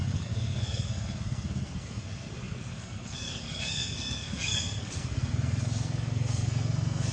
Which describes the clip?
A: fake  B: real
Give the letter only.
A